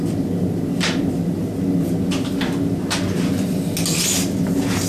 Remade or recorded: recorded